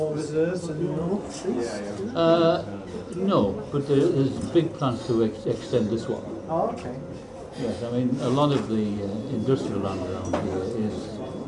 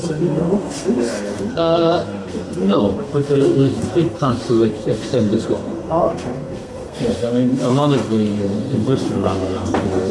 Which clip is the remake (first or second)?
second